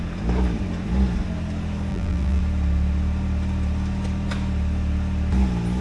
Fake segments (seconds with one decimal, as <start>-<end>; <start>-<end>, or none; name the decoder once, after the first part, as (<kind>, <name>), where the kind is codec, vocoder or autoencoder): 1.9-2.4 (vocoder, BigVGAN v2)